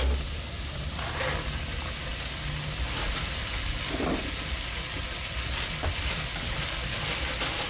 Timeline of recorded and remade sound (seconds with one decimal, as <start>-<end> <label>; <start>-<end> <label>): 0.0-7.7 recorded